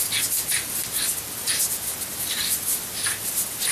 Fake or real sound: real